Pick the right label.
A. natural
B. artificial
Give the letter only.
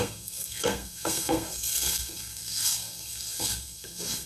B